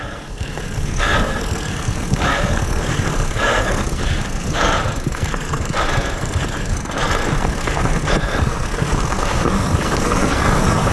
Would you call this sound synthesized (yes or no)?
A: yes